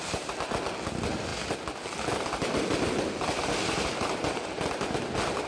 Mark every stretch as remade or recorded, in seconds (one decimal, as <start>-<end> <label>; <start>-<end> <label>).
0.0-5.5 recorded